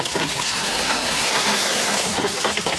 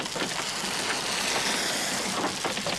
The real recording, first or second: second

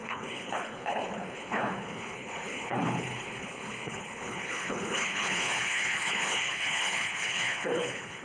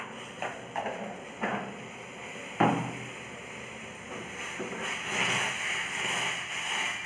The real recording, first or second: second